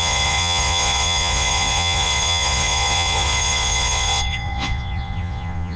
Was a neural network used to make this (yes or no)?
yes